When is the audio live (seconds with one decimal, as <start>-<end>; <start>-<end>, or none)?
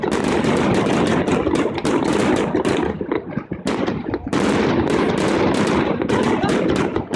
0.0-1.8; 6.1-7.2